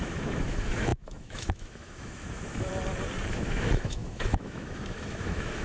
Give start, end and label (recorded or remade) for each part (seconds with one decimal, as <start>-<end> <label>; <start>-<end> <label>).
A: 0.0-2.7 remade; 2.7-3.3 recorded; 3.3-5.6 remade